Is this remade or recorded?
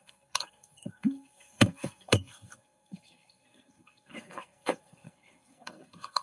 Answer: remade